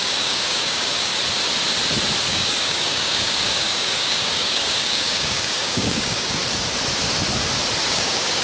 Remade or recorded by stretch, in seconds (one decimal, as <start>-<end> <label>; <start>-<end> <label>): 0.0-1.1 remade; 1.1-2.3 recorded; 2.3-6.4 remade; 6.4-7.8 recorded; 7.8-8.4 remade